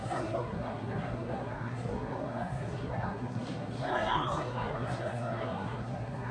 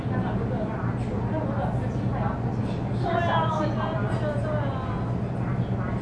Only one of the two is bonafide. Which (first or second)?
second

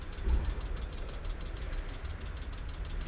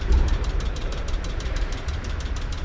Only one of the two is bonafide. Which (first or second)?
first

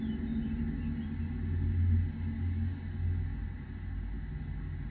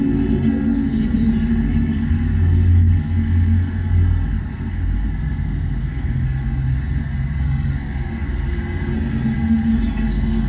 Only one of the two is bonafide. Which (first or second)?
first